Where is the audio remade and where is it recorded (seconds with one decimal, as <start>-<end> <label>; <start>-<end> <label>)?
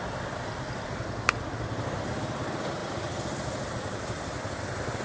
0.0-5.0 recorded